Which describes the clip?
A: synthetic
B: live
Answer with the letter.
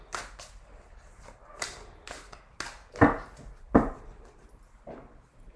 B